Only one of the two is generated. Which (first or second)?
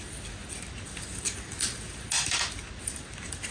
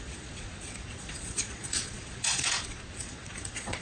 second